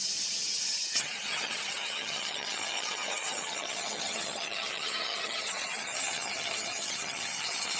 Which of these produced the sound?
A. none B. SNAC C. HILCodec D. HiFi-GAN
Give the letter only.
D